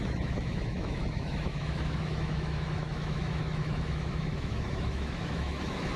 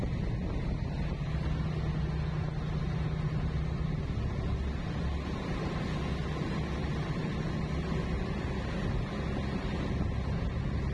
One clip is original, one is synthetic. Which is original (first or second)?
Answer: second